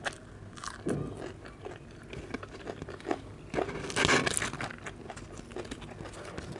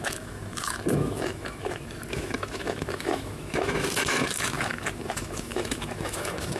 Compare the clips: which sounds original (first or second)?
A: first